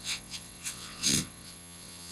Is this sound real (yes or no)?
no